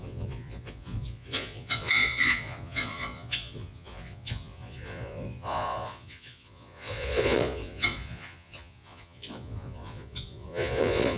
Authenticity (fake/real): fake